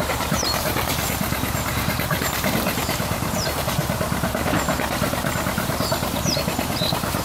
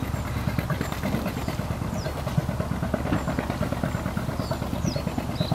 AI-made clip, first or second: first